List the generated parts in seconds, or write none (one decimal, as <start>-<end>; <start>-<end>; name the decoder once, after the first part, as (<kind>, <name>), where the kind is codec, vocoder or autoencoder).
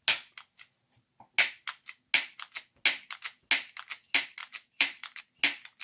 4.4-5.2 (vocoder, BigVGAN v2)